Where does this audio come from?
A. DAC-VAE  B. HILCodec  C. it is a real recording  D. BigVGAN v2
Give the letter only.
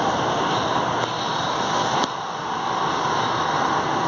C